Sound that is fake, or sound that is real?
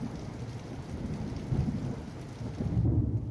real